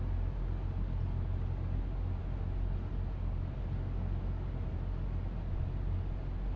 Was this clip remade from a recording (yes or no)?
no